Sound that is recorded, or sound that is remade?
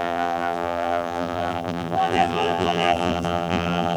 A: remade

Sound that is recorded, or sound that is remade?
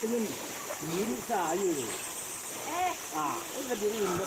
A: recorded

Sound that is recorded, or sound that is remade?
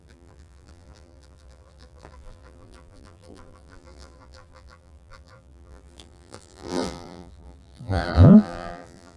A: remade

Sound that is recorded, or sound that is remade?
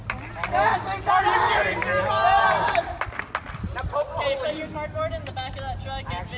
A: recorded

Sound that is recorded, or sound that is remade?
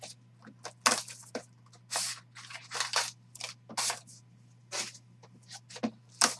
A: recorded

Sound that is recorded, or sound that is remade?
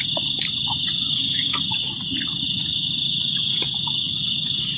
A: recorded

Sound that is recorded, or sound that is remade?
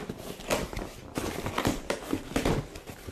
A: recorded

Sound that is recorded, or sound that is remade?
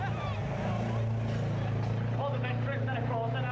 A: recorded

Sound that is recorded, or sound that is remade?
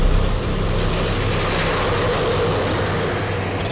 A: recorded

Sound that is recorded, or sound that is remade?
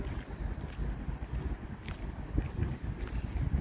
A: recorded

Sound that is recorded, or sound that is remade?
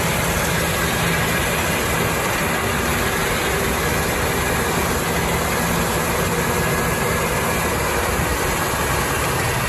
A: recorded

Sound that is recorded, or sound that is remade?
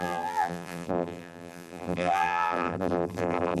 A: remade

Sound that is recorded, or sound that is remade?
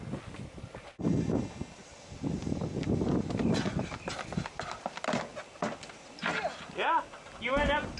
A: recorded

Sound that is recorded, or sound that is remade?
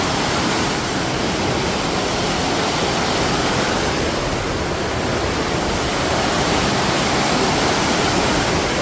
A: recorded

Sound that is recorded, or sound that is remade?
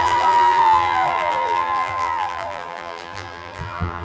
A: remade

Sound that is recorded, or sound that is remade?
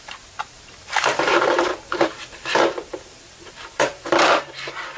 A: remade